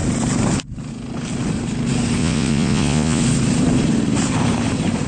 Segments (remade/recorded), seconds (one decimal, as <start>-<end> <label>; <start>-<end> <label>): 0.0-2.2 recorded; 2.2-3.2 remade; 3.2-5.1 recorded

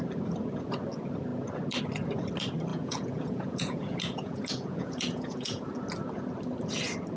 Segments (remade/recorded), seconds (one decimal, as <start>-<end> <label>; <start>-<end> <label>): 0.0-2.7 recorded; 2.7-5.7 remade; 5.7-7.2 recorded

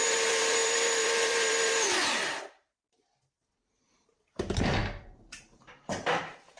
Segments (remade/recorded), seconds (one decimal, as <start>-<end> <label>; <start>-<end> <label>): 0.0-4.8 remade; 4.8-5.4 recorded; 5.4-6.6 remade

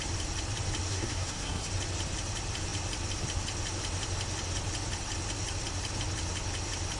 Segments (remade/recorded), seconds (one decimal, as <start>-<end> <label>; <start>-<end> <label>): 0.0-0.9 recorded; 0.9-1.7 remade; 1.7-7.0 recorded

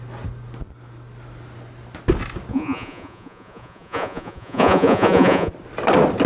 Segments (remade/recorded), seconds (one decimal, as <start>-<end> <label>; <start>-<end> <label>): 0.0-2.5 recorded; 2.5-5.5 remade; 5.5-6.3 recorded

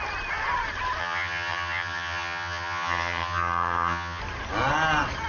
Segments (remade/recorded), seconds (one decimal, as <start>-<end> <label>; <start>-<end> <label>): 0.0-1.0 recorded; 1.0-4.2 remade; 4.2-5.3 recorded